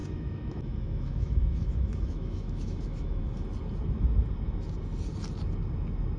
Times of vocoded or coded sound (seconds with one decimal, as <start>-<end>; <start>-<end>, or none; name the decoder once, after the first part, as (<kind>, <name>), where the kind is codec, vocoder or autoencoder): 0.0-3.2 (autoencoder, DAC-VAE)